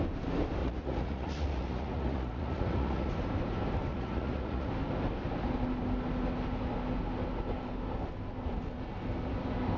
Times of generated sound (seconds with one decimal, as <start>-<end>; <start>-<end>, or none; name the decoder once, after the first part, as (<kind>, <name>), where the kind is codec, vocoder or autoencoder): 0.6-3.1 (vocoder, Vocos); 3.9-4.7